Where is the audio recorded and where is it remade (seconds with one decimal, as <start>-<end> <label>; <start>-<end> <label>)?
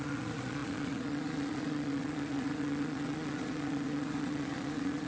0.0-5.1 remade